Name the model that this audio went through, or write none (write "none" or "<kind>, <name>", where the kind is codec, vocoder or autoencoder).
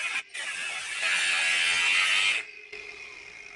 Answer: none